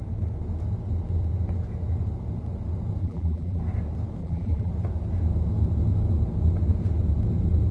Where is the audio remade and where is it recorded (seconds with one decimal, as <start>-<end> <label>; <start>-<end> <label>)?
0.0-3.0 recorded; 3.0-3.6 remade; 3.6-4.2 recorded; 4.2-4.7 remade; 4.7-7.7 recorded